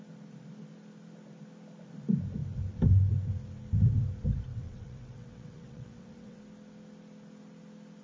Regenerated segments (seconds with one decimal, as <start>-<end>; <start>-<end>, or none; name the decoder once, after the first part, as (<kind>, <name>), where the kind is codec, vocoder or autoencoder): 4.5-6.4 (vocoder, WaveNeXt)